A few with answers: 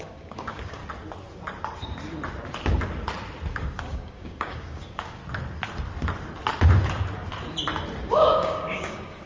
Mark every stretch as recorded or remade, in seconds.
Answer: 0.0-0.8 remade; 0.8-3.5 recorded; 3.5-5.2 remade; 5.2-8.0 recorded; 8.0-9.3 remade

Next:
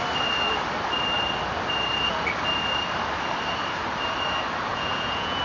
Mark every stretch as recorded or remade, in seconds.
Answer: 0.0-4.7 recorded; 4.7-5.4 remade

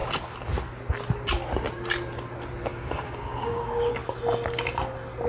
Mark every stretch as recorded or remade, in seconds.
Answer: 0.0-2.7 recorded; 2.7-3.9 remade; 3.9-5.3 recorded